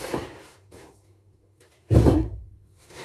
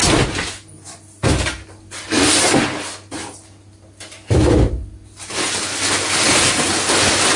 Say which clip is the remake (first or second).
first